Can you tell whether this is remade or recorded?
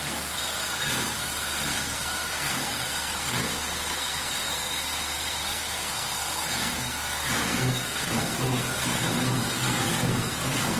remade